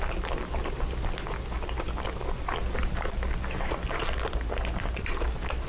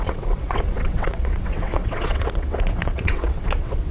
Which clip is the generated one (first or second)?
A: second